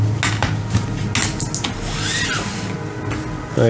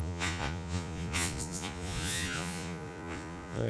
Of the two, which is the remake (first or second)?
second